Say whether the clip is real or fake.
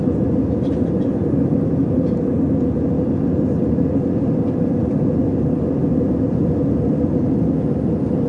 real